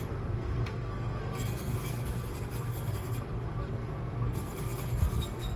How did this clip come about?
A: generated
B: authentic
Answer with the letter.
A